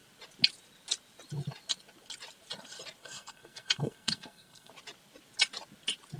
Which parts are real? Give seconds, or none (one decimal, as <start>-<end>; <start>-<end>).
0.0-3.0; 4.7-6.2